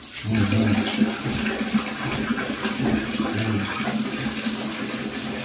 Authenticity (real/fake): real